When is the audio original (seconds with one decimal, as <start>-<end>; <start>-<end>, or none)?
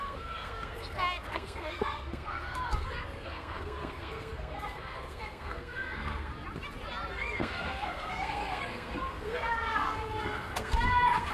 6.3-7.1